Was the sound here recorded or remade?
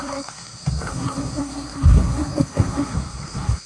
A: remade